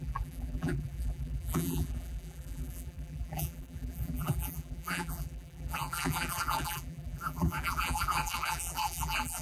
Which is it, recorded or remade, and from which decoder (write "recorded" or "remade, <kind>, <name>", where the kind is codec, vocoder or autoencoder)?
remade, vocoder, BigVGAN v2